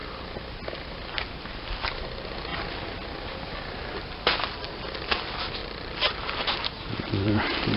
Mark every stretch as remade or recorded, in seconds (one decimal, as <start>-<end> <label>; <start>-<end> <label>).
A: 0.0-5.6 recorded; 5.6-7.8 remade